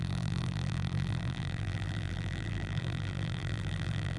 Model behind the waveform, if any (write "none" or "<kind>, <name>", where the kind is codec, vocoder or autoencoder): vocoder, BigVGAN v2